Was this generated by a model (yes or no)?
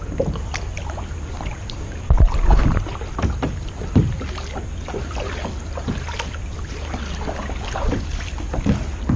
no